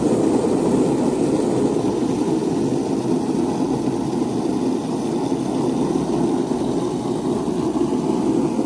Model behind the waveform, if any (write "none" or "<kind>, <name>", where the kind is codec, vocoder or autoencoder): none